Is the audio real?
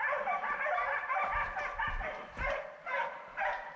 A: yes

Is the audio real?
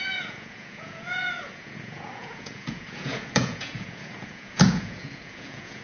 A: no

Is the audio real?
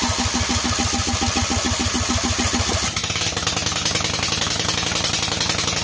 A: yes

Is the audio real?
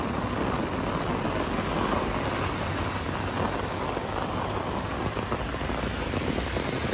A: yes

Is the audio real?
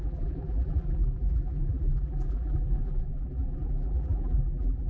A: no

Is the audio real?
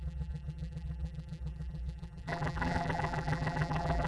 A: no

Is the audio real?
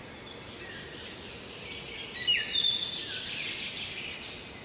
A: yes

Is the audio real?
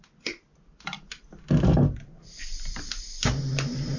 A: yes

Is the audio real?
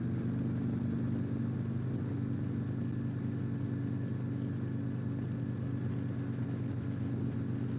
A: yes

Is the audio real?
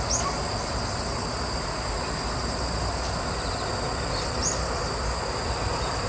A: yes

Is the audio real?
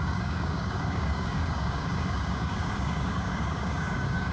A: no